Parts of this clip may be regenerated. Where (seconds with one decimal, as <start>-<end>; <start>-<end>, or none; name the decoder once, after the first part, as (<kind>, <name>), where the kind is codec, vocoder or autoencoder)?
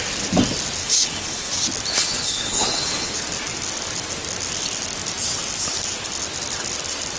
0.8-1.5 (codec, HILCodec); 1.9-3.1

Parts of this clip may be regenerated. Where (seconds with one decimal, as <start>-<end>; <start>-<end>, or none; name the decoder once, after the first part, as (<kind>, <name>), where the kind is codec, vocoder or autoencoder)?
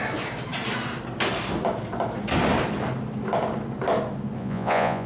4.4-5.1 (vocoder, Vocos)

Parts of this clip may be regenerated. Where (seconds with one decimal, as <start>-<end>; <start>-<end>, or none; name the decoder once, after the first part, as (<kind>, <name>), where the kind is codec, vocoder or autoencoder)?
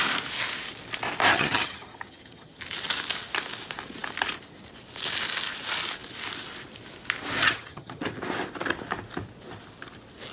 1.3-2.6 (vocoder, HiFi-GAN); 7.4-8.0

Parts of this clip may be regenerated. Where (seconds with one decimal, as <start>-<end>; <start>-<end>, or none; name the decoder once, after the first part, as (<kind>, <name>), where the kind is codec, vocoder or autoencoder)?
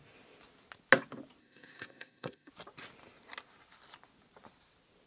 1.4-2.5 (codec, SNAC)